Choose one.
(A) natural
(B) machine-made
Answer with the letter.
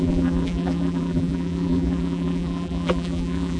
B